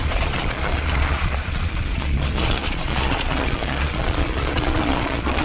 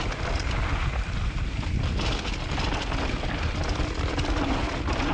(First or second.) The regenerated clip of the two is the first